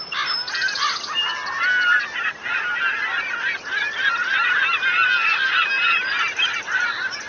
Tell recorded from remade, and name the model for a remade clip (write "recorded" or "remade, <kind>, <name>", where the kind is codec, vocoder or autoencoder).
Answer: recorded